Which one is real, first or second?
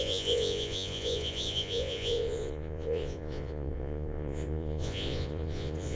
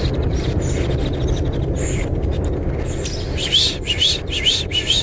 second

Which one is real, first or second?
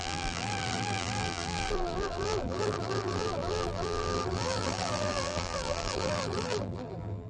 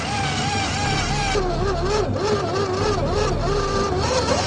second